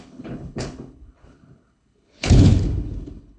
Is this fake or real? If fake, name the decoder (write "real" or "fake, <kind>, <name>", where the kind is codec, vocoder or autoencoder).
fake, codec, HILCodec